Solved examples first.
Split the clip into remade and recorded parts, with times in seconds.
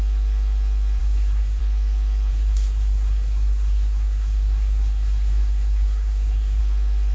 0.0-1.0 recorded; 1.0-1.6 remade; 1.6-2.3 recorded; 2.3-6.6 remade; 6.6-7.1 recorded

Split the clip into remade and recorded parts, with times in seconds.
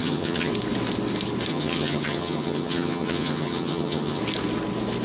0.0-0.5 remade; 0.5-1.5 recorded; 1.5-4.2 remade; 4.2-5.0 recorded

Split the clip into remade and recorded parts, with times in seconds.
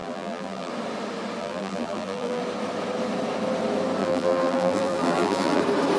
0.0-0.7 remade; 0.7-1.4 recorded; 1.4-2.4 remade; 2.4-4.0 recorded; 4.0-5.6 remade; 5.6-6.0 recorded